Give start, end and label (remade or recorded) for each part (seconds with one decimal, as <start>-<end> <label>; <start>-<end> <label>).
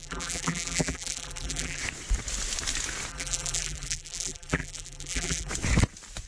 0.0-1.8 remade; 1.8-3.1 recorded; 3.1-5.5 remade; 5.5-6.3 recorded